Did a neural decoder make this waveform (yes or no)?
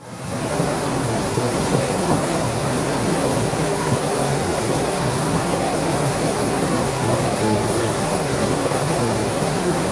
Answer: yes